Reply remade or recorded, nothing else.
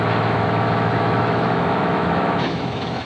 remade